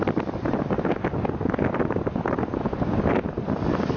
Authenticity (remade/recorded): recorded